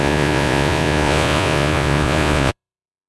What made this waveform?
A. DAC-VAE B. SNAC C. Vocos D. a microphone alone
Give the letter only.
C